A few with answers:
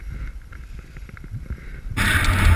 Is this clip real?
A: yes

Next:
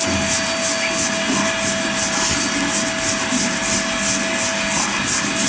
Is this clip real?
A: yes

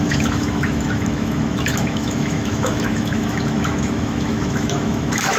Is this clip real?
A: no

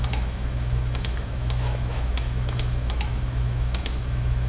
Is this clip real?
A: no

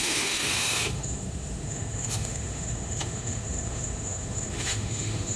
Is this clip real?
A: no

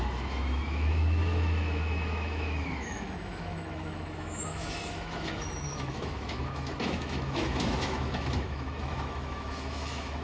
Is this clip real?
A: no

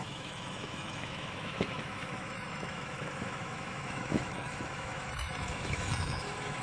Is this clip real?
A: no